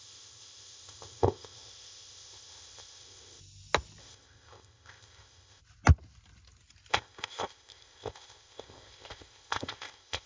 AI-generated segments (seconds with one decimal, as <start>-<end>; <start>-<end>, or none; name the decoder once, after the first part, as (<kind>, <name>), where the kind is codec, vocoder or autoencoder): 0.0-3.4 (codec, ZipCodec); 4.0-5.6; 6.9-10.3